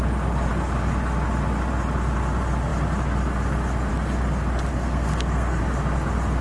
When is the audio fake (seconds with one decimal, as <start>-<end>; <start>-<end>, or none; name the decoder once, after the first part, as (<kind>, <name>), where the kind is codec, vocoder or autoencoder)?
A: 4.7-5.6 (codec, SNAC)